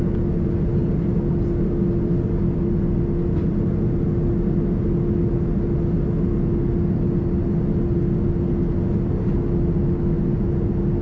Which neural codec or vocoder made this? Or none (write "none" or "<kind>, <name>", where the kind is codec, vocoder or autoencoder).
none